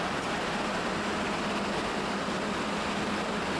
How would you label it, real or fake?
real